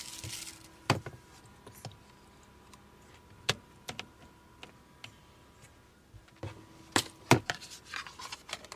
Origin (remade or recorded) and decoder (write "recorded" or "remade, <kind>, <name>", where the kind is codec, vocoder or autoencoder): recorded